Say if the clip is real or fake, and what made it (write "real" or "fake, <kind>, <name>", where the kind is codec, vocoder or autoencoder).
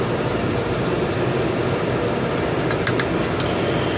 real